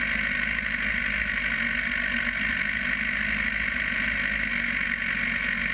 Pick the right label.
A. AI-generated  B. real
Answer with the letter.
B